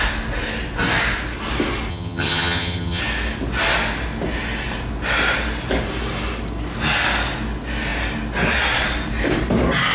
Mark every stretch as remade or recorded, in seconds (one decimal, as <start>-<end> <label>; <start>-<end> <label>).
0.0-1.9 recorded; 1.9-3.0 remade; 3.0-9.9 recorded